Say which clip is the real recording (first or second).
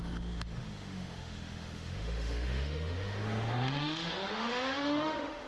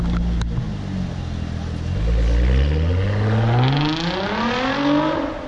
second